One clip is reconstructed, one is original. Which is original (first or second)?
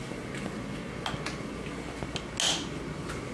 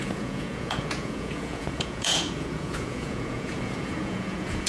first